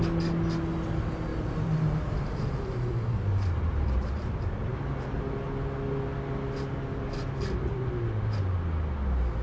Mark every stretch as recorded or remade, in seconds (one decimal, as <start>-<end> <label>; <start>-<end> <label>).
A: 0.0-1.3 recorded; 1.3-4.7 remade; 4.7-7.6 recorded; 7.6-8.4 remade; 8.4-9.4 recorded